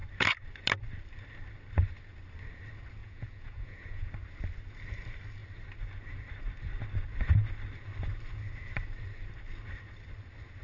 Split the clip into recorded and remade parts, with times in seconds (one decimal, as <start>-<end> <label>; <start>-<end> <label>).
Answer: 0.0-3.0 recorded; 3.0-4.1 remade; 4.1-10.6 recorded